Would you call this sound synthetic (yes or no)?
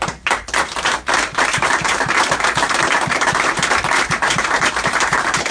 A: yes